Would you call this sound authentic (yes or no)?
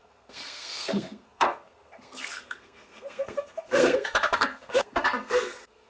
no